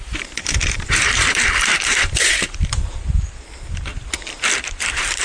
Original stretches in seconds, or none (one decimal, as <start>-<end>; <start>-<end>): 3.9-4.7